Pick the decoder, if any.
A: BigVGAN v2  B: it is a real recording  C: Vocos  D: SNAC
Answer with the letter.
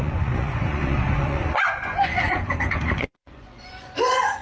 C